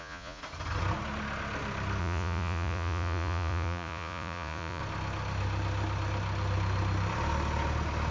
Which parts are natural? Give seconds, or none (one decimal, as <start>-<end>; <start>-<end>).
0.4-2.0; 4.8-8.1